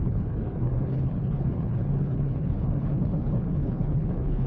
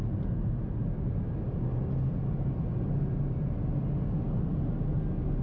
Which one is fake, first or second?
first